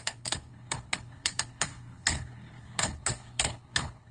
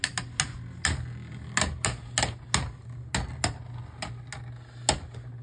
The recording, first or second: second